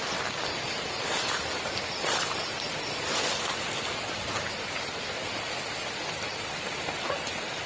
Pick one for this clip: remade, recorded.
recorded